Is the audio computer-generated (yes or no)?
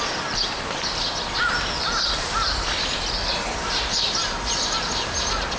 yes